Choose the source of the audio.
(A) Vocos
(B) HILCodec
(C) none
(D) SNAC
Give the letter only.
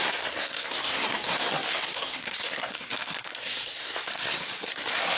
D